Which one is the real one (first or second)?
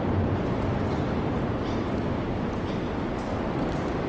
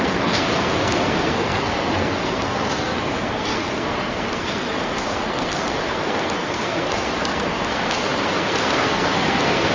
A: first